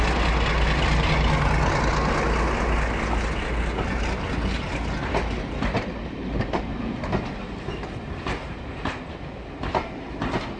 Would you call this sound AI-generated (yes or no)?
no